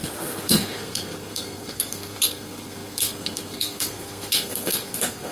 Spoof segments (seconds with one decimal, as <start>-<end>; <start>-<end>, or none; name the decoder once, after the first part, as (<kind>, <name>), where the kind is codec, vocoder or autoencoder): 0.0-5.3 (codec, SNAC)